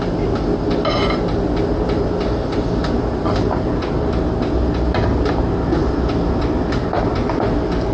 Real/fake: real